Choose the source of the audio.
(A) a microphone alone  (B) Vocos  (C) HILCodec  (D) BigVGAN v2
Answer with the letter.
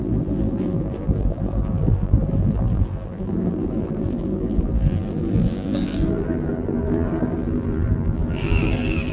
D